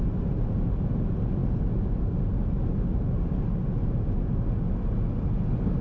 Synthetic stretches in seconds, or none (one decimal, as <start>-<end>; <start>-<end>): none